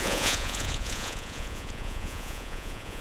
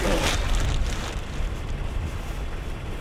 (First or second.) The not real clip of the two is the first